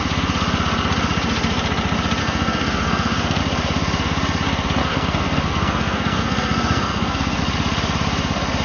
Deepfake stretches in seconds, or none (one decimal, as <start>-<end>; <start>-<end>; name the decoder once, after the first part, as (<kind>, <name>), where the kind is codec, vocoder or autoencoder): 2.2-3.4 (codec, SNAC); 4.8-7.4